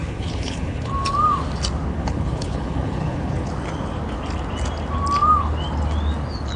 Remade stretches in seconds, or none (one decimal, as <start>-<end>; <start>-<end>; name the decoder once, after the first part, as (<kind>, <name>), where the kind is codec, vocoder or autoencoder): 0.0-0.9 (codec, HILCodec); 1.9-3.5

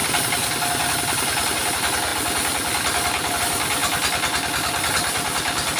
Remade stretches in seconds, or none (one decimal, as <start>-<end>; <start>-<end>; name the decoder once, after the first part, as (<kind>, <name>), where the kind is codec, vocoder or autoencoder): none

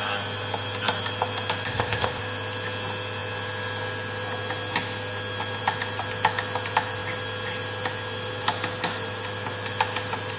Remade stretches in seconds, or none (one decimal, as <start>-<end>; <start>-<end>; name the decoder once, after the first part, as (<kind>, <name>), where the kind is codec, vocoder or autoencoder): 1.7-2.2 (codec, ZipCodec)

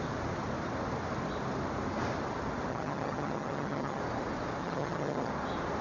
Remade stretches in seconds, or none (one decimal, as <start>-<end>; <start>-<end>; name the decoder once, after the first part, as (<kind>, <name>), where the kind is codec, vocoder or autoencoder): 2.7-4.0 (vocoder, HiFi-GAN); 4.6-5.3

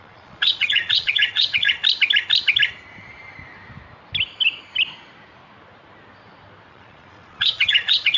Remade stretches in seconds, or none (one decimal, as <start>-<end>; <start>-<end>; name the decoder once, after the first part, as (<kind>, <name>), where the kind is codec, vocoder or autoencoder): 0.0-1.8 (vocoder, Vocos); 6.7-8.2

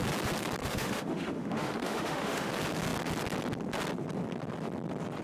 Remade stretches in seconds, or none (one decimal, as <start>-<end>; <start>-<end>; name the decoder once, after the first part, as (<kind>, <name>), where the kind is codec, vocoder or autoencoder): 0.6-2.5 (autoencoder, DAC-VAE)